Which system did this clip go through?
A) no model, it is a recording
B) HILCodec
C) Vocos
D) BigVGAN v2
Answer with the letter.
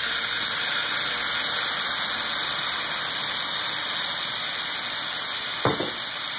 A